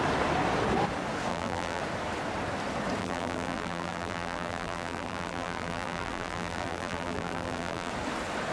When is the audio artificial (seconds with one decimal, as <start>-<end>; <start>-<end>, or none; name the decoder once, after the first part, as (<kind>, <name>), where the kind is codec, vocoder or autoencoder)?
1.3-1.8 (vocoder, BigVGAN v2); 3.0-7.9